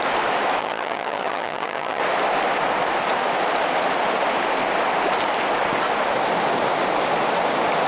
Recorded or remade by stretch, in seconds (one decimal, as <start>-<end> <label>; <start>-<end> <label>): 0.0-0.6 recorded; 0.6-2.0 remade; 2.0-7.9 recorded